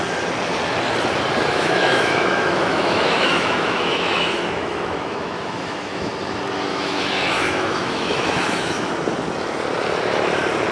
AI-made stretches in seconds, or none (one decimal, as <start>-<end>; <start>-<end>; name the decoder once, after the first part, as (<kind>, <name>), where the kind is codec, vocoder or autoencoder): 1.5-6.1 (autoencoder, DAC-VAE); 6.7-8.9